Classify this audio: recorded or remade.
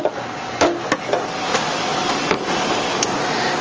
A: recorded